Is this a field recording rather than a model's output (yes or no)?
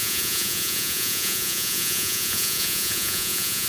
no